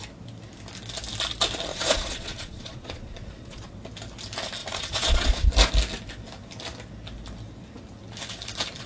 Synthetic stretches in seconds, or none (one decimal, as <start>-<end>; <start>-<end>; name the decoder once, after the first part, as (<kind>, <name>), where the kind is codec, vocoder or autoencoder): 1.7-3.7 (vocoder, Vocos); 4.6-5.5